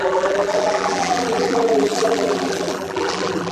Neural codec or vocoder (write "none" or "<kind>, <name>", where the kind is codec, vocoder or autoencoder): vocoder, BigVGAN v2